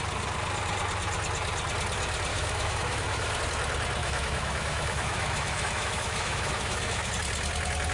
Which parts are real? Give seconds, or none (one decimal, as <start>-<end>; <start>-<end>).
0.0-2.3; 3.4-4.0; 7.1-7.9